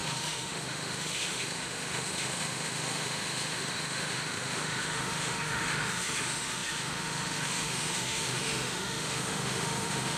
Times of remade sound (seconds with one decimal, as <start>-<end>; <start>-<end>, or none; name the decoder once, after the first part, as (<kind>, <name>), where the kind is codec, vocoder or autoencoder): 0.0-10.2 (autoencoder, DAC-VAE)